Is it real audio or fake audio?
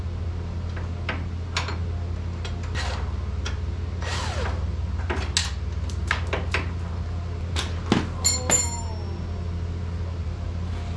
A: real